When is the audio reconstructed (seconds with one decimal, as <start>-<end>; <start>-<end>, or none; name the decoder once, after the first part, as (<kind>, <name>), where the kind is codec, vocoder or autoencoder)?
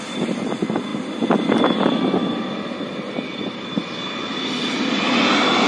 none